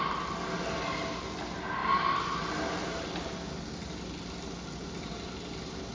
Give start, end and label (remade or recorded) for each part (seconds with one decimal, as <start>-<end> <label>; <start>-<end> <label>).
0.0-5.9 recorded

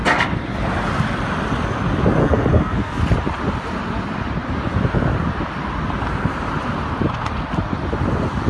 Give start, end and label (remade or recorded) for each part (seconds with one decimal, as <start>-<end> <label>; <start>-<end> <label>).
0.0-2.2 recorded; 2.2-3.0 remade; 3.0-8.5 recorded